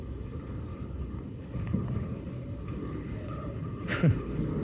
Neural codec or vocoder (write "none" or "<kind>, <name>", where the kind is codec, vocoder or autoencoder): codec, HILCodec